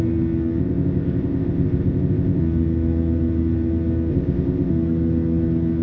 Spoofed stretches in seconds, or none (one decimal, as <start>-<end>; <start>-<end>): 0.6-2.4; 4.1-4.7